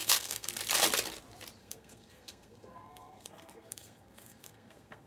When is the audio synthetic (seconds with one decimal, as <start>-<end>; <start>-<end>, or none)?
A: 0.0-0.5; 1.6-5.1